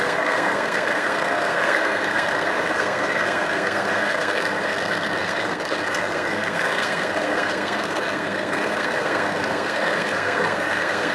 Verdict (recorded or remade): remade